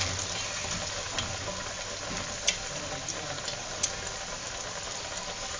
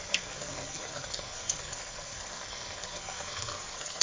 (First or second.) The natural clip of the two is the first